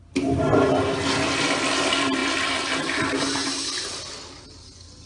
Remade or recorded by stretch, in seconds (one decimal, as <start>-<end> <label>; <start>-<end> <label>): 0.0-5.1 recorded